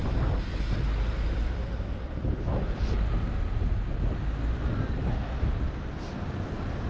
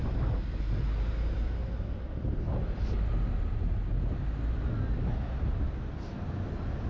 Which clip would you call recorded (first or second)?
second